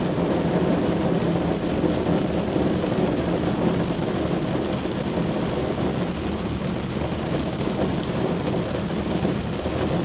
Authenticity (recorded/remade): recorded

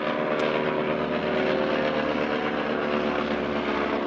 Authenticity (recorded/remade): recorded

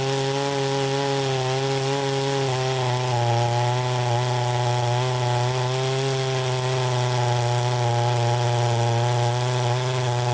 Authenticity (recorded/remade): recorded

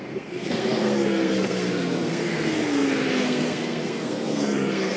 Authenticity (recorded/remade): remade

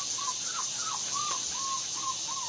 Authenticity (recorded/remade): recorded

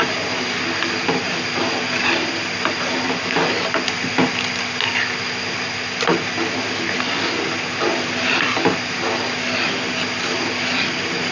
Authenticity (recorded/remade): recorded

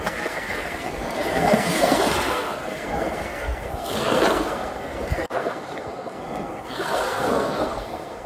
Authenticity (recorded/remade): remade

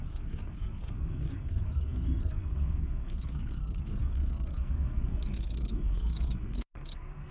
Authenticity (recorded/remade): remade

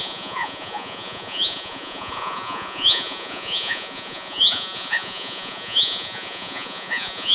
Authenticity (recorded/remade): remade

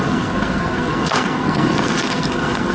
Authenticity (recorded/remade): remade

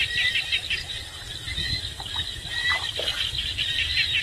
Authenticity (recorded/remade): recorded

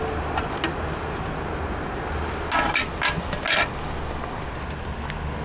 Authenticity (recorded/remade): recorded